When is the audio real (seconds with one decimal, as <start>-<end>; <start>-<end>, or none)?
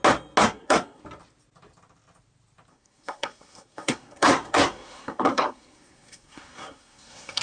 0.0-0.4; 1.0-2.7